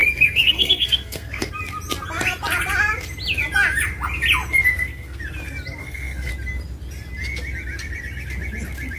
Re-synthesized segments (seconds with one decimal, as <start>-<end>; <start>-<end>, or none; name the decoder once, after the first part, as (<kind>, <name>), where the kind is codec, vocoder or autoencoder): 0.0-1.5 (codec, SNAC); 4.7-5.2; 5.8-6.3